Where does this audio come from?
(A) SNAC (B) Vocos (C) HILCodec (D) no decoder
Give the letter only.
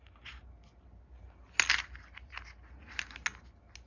D